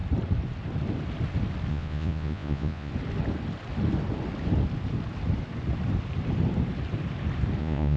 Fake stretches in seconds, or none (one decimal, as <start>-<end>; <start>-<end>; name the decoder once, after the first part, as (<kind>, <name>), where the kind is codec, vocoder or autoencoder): 1.7-2.9 (vocoder, Vocos); 7.6-8.0